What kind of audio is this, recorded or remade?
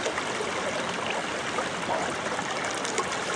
recorded